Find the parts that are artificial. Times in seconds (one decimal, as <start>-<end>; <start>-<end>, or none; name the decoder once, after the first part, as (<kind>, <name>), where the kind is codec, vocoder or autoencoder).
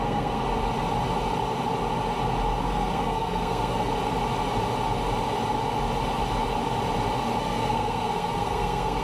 0.0-0.4 (codec, SNAC); 2.6-3.9; 7.4-9.0